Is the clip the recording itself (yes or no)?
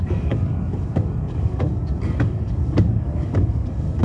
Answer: no